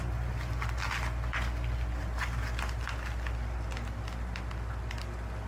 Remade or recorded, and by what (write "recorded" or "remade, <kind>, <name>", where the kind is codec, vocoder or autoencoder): recorded